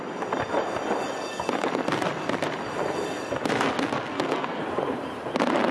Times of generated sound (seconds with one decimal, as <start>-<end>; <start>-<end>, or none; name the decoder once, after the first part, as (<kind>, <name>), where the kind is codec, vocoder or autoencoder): 4.1-4.6 (codec, SNAC)